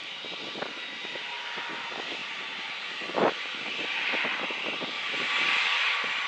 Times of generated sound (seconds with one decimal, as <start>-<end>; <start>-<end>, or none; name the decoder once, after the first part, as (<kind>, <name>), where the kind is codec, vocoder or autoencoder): none